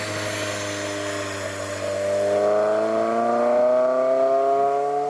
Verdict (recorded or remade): recorded